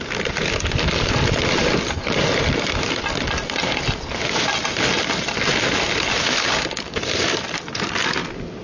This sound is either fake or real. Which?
real